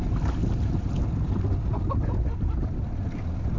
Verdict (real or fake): real